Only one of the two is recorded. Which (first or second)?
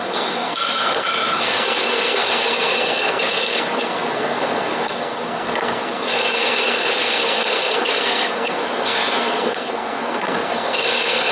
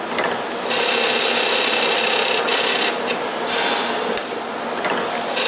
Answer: second